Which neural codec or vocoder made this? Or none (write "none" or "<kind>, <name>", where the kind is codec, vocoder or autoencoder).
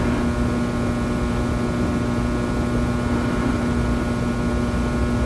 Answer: none